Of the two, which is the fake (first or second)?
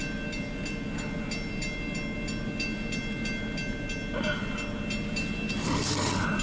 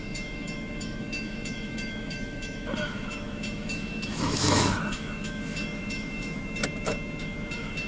second